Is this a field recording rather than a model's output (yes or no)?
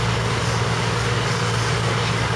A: no